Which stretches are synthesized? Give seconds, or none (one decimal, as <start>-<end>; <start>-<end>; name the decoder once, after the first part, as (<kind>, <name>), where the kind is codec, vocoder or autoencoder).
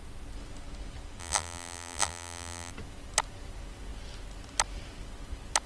1.2-2.7 (vocoder, BigVGAN v2)